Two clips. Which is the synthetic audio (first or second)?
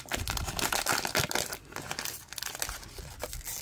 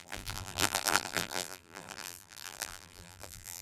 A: second